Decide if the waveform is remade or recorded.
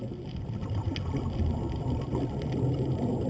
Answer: recorded